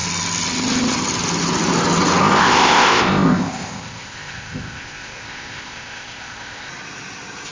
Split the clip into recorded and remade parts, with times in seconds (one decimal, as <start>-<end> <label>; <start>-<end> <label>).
0.0-2.2 recorded; 2.2-6.7 remade; 6.7-7.5 recorded